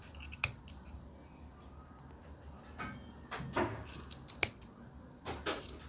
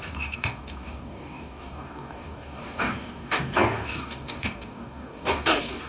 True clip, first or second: first